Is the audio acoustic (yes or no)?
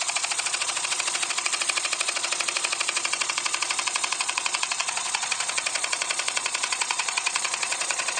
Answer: no